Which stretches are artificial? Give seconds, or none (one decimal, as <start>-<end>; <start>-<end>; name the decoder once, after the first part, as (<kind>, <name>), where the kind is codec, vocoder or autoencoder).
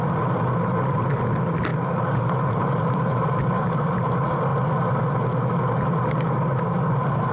1.7-3.5 (vocoder, BigVGAN v2)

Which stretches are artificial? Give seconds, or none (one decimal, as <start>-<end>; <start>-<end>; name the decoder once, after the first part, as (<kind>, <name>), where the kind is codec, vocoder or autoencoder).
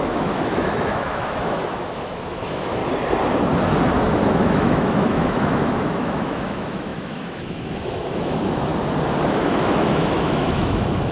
0.0-2.8 (autoencoder, DAC-VAE); 4.3-8.7; 9.4-11.1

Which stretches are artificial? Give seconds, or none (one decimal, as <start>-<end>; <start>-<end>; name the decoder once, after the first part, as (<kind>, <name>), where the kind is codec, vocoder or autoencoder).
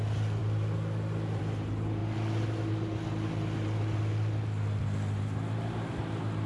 none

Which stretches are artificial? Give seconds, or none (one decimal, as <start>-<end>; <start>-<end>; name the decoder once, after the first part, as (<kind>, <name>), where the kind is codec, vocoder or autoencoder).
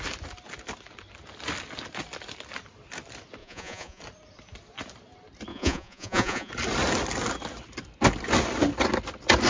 3.4-4.0 (vocoder, Vocos); 5.5-6.5